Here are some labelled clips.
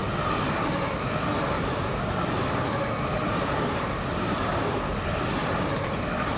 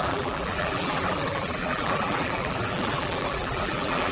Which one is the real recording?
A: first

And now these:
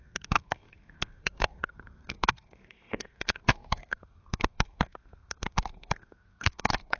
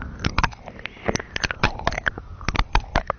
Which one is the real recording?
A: second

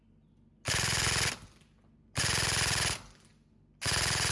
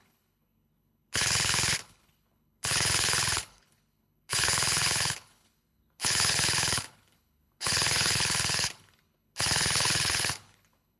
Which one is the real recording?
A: first